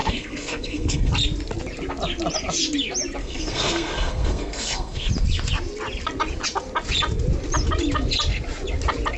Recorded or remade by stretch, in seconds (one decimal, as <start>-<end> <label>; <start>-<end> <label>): 0.0-1.1 remade; 1.1-3.2 recorded; 3.2-5.1 remade; 5.1-9.2 recorded